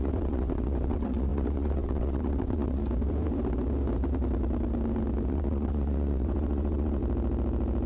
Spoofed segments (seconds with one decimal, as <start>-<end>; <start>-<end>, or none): 0.0-2.8; 5.3-7.0